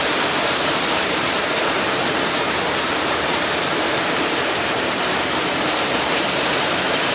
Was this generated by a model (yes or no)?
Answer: yes